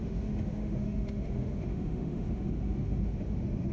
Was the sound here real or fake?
fake